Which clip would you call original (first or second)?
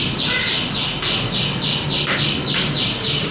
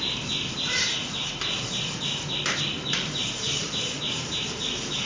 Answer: first